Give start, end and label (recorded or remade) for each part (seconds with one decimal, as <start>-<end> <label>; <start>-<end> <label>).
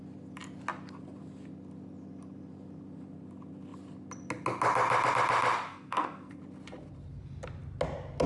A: 0.0-5.7 recorded; 5.7-6.4 remade; 6.4-8.3 recorded